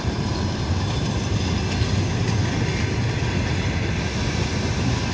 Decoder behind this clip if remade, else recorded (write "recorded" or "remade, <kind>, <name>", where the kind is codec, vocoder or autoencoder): recorded